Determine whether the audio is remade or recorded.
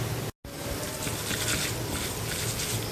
recorded